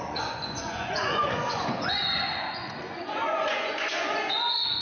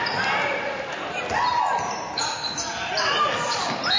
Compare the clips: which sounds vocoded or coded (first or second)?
first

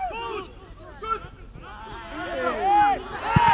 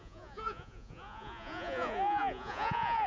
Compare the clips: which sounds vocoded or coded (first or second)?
second